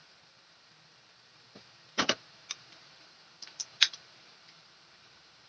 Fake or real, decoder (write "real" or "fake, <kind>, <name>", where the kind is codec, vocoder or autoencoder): fake, vocoder, BigVGAN v2